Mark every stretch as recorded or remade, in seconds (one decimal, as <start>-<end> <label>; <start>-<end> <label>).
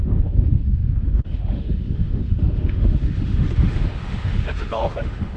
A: 0.0-5.4 remade